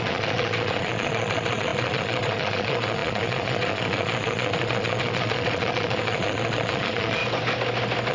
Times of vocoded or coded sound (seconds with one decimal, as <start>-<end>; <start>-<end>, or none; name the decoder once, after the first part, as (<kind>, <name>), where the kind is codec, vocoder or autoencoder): 0.0-7.2 (vocoder, Vocos)